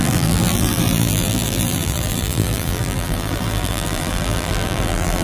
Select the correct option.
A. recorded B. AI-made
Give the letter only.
B